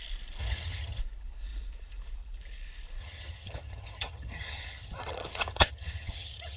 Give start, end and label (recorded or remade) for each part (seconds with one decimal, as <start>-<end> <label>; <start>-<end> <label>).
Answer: 0.0-0.4 recorded; 0.4-1.0 remade; 1.0-3.0 recorded; 3.0-6.6 remade